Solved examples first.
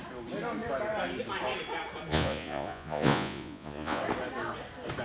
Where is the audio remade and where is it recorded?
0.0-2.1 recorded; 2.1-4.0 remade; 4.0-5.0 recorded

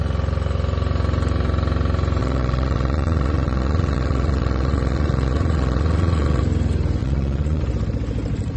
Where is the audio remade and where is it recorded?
0.0-2.2 recorded; 2.2-6.4 remade; 6.4-7.0 recorded; 7.0-7.6 remade; 7.6-8.6 recorded

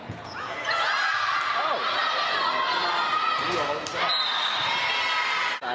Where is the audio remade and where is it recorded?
0.0-0.9 remade; 0.9-5.7 recorded

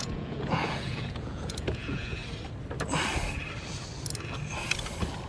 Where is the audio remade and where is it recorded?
0.0-2.2 remade; 2.2-5.3 recorded

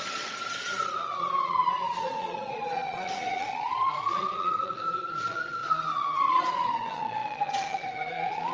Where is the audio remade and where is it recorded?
0.0-8.5 remade

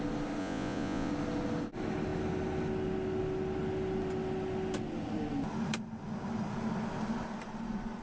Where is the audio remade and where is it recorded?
0.0-0.4 recorded; 0.4-1.1 remade; 1.1-8.0 recorded